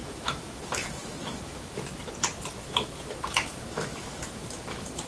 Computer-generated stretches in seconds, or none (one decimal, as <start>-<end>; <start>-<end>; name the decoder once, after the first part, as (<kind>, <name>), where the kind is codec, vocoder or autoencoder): 0.0-1.9 (autoencoder, DAC-VAE); 2.6-5.1